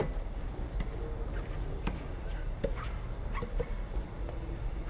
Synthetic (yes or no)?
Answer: no